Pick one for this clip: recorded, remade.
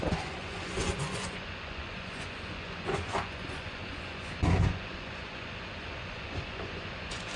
remade